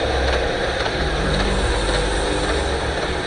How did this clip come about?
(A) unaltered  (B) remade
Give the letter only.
A